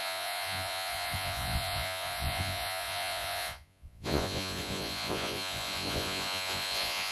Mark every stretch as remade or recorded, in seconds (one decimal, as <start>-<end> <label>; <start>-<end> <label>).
0.0-7.1 remade